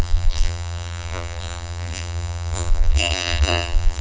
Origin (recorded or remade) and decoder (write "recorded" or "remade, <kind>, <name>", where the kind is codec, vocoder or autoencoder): remade, vocoder, BigVGAN v2